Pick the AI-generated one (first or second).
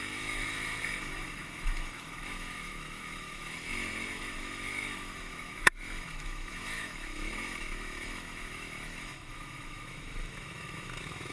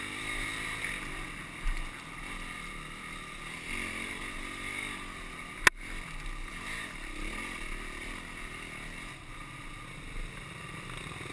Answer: first